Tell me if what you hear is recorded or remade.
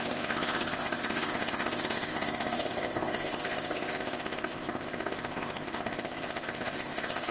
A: remade